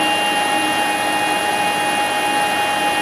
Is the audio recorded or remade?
recorded